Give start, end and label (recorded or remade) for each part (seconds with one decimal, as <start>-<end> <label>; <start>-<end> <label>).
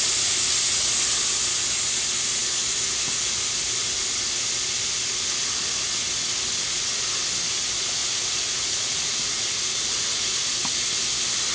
0.0-8.0 recorded; 8.0-10.5 remade; 10.5-11.5 recorded